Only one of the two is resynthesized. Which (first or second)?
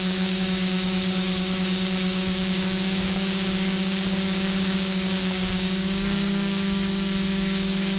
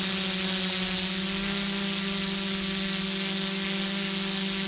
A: first